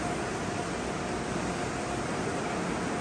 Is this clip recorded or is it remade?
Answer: recorded